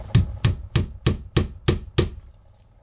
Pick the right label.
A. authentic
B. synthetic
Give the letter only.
A